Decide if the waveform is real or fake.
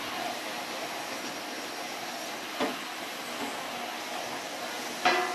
real